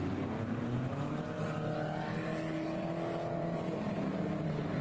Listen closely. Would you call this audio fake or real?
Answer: real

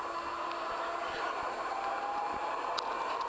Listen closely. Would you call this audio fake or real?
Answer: real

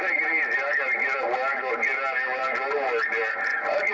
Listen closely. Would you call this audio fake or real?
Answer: real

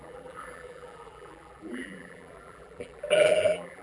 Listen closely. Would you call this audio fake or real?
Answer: fake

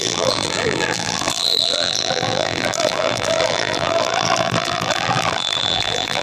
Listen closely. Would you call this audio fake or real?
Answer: fake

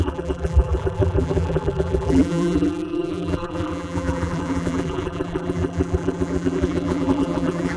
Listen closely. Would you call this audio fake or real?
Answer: fake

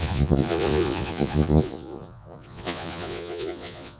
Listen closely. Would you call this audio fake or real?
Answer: fake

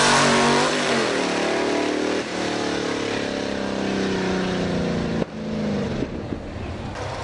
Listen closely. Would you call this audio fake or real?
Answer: real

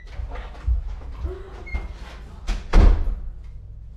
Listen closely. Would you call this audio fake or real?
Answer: real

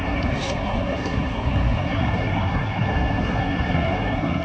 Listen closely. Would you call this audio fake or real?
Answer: fake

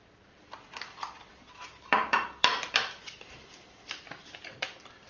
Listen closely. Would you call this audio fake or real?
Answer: fake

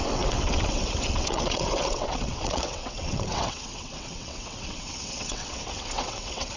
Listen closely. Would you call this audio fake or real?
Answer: fake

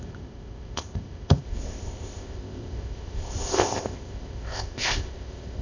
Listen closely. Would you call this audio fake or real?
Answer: fake